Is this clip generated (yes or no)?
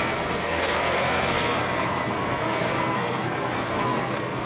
yes